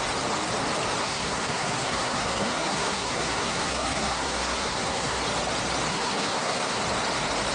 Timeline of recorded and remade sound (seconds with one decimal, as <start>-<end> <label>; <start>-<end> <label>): 0.0-1.0 recorded; 1.0-5.2 remade; 5.2-5.9 recorded; 5.9-6.8 remade; 6.8-7.5 recorded